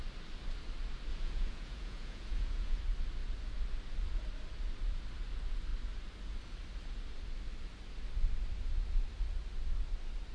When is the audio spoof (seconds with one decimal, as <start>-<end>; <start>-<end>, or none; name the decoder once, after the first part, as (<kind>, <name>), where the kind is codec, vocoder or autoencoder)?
1.1-2.8 (vocoder, Vocos)